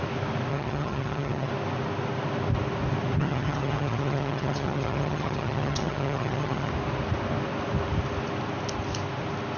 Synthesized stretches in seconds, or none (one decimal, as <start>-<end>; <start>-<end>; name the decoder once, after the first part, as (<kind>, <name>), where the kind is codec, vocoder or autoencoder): 0.5-1.5 (vocoder, HiFi-GAN); 3.2-6.7